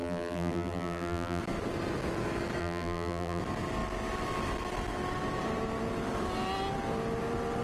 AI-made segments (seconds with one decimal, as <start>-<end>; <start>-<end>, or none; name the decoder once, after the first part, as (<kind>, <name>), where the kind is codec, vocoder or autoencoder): 0.0-1.4 (vocoder, BigVGAN v2); 2.6-3.4